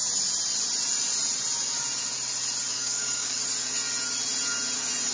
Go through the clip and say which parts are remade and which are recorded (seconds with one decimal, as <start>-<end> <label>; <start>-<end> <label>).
0.0-2.7 recorded; 2.7-3.4 remade; 3.4-5.1 recorded